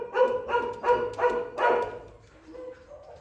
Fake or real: real